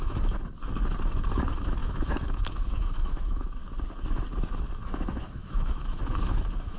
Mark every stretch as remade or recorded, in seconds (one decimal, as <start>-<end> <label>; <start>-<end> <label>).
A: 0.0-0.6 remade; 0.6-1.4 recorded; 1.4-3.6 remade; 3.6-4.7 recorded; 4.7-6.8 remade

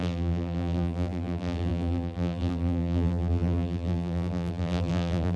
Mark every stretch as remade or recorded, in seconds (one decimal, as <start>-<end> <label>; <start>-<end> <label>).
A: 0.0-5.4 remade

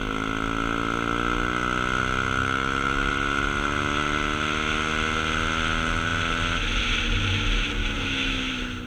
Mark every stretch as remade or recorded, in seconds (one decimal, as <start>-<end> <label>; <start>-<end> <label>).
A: 0.0-2.4 recorded; 2.4-3.1 remade; 3.1-7.8 recorded; 7.8-8.5 remade; 8.5-8.9 recorded

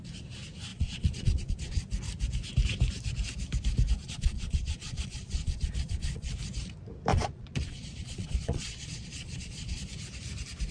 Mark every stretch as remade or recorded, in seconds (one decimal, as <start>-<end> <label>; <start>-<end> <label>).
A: 0.0-0.7 recorded; 0.7-1.8 remade; 1.8-4.0 recorded; 4.0-6.3 remade; 6.3-7.1 recorded; 7.1-9.8 remade; 9.8-10.7 recorded